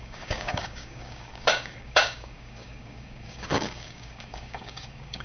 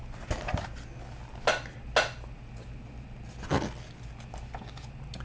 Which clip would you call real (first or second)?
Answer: second